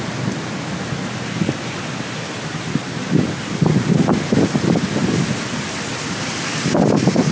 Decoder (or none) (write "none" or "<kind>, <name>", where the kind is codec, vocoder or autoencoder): none